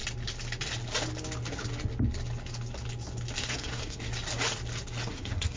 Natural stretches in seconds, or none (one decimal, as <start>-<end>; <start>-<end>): 0.0-3.4; 4.1-5.1